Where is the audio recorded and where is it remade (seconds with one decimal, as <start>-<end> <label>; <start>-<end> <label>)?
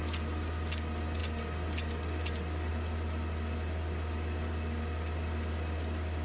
0.0-6.2 recorded